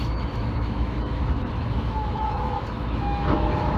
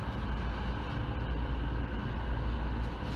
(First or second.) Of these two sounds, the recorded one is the second